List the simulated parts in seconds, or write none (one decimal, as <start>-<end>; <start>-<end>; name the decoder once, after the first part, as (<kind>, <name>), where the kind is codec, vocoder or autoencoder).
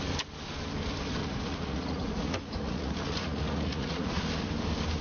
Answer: 1.2-4.2 (vocoder, Vocos)